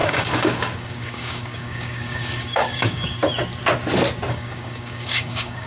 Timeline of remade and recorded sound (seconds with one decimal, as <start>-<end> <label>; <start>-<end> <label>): 0.0-3.2 remade; 3.2-4.3 recorded; 4.3-5.7 remade